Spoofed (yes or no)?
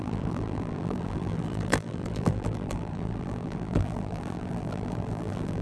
yes